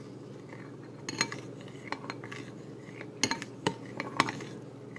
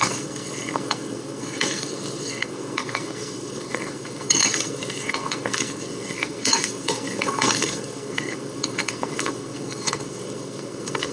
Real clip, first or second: first